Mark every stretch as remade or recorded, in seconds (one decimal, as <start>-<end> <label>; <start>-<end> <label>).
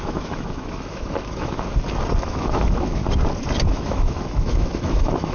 0.0-1.7 remade; 1.7-2.2 recorded; 2.2-3.0 remade; 3.0-3.7 recorded; 3.7-5.3 remade